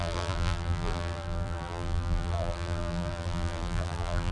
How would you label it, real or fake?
fake